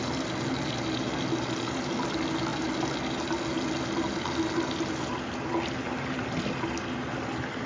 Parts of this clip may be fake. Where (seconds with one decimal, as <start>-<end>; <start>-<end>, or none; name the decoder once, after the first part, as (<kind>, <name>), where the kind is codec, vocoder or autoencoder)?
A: none